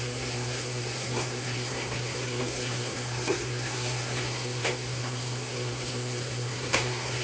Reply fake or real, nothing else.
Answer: fake